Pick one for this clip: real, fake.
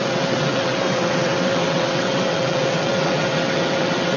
fake